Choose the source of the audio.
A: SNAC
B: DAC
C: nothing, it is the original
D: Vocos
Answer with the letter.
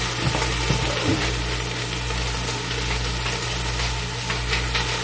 C